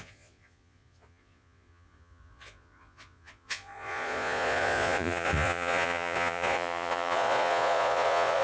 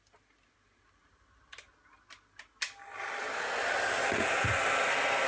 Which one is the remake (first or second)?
first